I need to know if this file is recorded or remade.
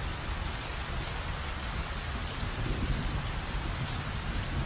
recorded